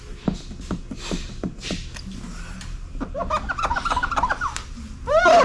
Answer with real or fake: real